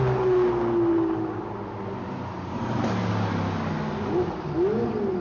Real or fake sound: real